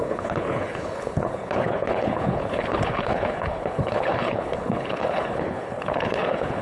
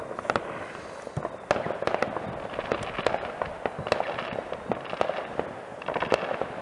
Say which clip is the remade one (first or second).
first